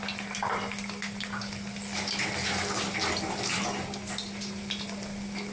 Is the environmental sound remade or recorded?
recorded